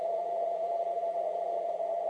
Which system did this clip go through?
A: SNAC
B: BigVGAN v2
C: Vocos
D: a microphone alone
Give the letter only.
B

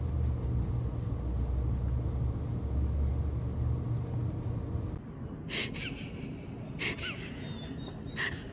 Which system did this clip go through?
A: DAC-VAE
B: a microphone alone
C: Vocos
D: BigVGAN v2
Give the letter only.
B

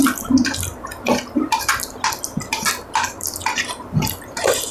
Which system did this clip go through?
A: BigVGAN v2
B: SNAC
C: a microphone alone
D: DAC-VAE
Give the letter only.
C